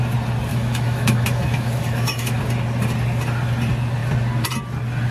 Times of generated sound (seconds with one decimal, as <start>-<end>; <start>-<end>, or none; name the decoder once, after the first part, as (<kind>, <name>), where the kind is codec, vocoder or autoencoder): 0.5-2.4 (autoencoder, DAC-VAE)

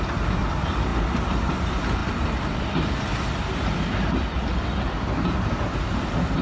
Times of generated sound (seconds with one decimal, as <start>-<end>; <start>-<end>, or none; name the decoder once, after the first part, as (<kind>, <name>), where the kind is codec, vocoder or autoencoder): none

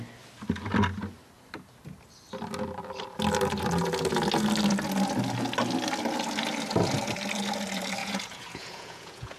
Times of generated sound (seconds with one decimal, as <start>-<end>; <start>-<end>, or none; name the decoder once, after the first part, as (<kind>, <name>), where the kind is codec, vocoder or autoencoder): 8.0-9.4 (vocoder, Vocos)

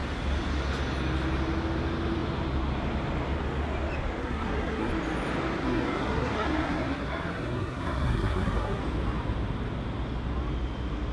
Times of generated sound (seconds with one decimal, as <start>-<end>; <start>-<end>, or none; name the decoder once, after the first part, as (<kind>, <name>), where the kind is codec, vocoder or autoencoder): 4.2-4.9 (codec, SNAC); 5.6-8.8

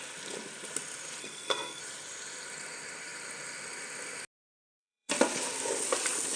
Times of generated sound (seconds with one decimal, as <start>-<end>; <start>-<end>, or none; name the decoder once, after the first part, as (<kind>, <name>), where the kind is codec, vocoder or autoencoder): 1.2-1.8 (codec, SNAC); 4.5-5.1

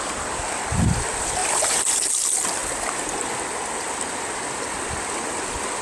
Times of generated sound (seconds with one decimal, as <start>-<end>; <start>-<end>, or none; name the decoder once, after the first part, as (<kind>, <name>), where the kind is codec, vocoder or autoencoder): 1.4-2.1 (vocoder, BigVGAN v2)

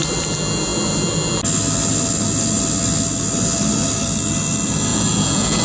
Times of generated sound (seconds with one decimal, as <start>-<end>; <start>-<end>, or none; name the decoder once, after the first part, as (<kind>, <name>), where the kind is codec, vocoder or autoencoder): 4.9-5.6 (vocoder, Vocos)